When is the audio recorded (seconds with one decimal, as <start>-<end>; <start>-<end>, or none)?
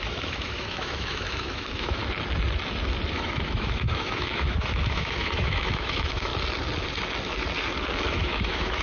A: 2.0-3.1; 6.3-8.1